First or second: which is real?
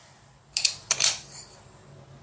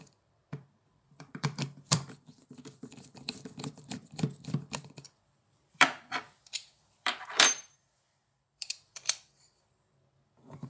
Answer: first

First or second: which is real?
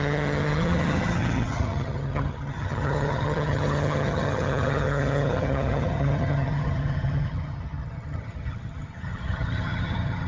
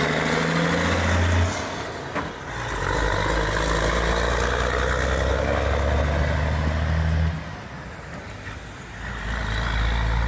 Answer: second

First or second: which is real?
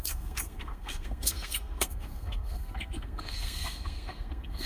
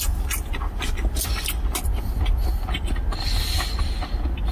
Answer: second